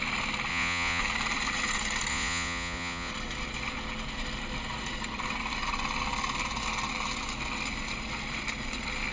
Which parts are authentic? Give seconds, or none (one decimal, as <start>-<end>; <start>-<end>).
0.0-0.5; 1.0-2.1; 3.1-9.1